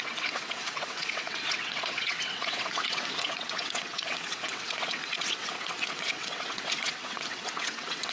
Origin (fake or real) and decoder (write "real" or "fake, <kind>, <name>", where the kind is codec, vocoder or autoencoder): fake, vocoder, WaveNeXt